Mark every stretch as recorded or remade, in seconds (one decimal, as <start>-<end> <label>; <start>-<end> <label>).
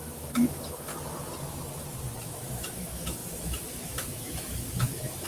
0.0-0.9 remade; 0.9-2.2 recorded; 2.2-5.3 remade